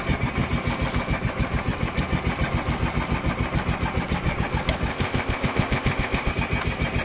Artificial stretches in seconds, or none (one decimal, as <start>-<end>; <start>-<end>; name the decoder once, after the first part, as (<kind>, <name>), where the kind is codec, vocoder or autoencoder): 4.9-6.3 (codec, ZipCodec)